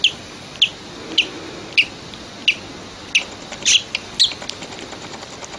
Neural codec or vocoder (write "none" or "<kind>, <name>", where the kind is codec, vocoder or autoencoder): none